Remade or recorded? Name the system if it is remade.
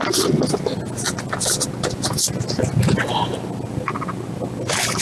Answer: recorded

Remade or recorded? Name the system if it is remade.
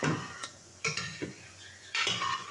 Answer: remade, vocoder, Vocos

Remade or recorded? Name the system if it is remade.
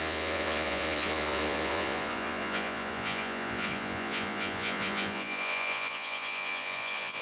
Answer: remade, vocoder, Vocos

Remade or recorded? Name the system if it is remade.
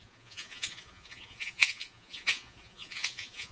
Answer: remade, vocoder, Vocos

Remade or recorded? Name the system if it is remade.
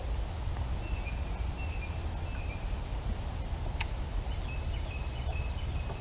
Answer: recorded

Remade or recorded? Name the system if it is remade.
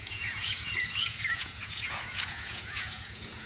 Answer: remade, vocoder, Vocos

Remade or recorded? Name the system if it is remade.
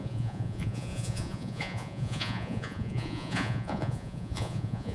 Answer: remade, vocoder, Vocos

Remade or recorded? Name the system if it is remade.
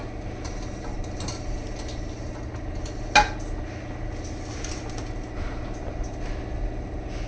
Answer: recorded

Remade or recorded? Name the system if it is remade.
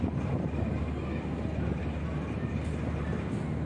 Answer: recorded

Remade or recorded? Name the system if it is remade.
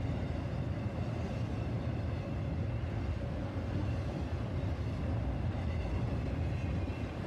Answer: recorded